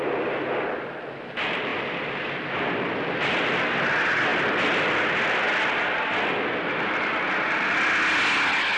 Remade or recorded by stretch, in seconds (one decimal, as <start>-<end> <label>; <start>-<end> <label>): 0.0-8.8 recorded